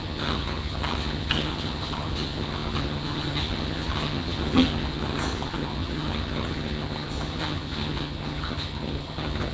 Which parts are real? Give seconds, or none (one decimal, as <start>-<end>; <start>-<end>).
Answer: none